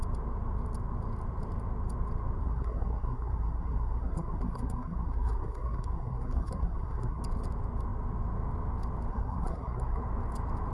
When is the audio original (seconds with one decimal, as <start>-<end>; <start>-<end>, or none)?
0.0-2.4; 7.2-9.1; 10.0-10.7